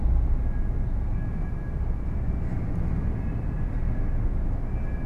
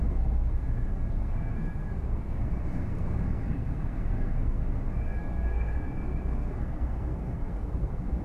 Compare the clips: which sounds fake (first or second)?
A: second